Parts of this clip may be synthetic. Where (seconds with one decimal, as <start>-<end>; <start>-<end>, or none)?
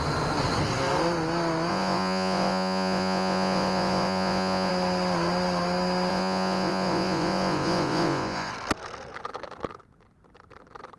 1.7-4.7; 6.1-8.5